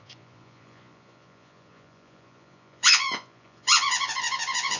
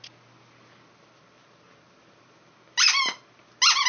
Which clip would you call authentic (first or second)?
second